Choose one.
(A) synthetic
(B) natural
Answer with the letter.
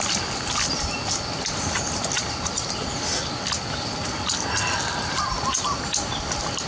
B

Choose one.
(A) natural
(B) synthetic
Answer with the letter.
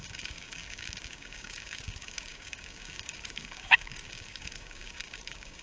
B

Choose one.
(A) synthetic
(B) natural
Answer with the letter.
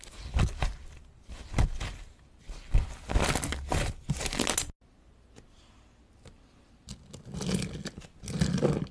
B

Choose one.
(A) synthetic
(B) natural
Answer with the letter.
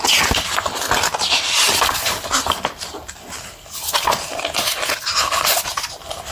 B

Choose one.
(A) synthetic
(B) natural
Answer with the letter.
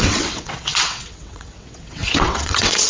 A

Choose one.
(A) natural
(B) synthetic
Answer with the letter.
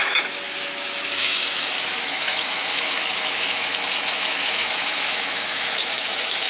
B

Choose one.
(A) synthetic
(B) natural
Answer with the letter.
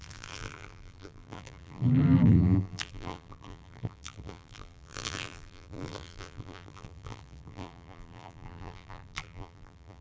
A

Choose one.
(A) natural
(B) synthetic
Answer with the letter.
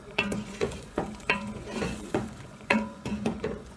B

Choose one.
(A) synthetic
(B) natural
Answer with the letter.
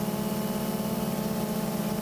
A